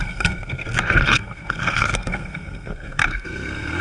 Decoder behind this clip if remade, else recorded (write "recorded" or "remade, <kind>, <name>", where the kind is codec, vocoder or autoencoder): remade, codec, SNAC